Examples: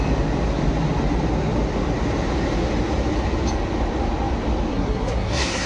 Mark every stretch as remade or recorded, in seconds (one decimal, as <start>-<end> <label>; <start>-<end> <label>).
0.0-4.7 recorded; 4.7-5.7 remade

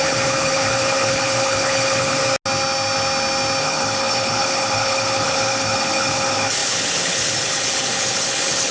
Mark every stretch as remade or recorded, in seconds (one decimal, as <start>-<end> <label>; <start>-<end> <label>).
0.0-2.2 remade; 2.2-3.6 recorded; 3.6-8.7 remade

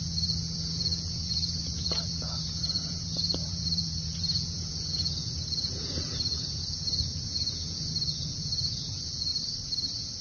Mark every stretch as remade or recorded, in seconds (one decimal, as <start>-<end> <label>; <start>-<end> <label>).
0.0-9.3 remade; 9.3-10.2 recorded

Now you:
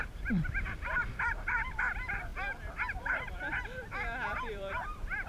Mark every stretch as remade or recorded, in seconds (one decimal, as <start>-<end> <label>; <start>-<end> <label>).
0.0-1.0 remade; 1.0-1.7 recorded; 1.7-2.3 remade; 2.3-4.5 recorded; 4.5-5.3 remade

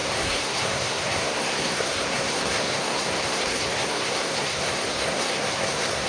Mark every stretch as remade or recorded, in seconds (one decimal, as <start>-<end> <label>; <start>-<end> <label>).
0.0-6.1 remade

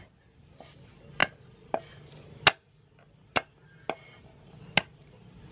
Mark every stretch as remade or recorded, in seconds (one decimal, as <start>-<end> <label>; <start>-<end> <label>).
0.0-5.5 recorded

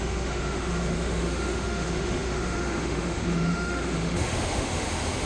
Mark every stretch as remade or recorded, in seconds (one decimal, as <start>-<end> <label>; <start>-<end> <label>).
0.0-5.3 remade